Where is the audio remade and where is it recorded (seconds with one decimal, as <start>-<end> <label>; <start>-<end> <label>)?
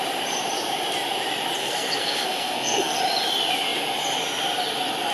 0.0-1.6 recorded; 1.6-3.0 remade; 3.0-5.1 recorded